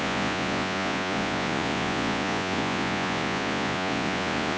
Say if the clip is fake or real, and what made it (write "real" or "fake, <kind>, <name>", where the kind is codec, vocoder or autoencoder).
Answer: fake, vocoder, Vocos